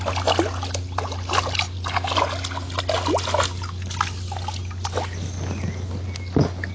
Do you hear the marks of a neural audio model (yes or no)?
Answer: no